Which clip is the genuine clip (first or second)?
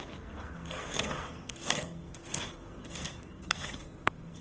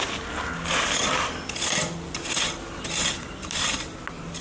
second